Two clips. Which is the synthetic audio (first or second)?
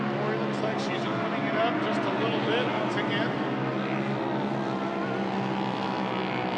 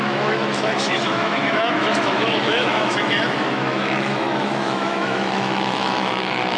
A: second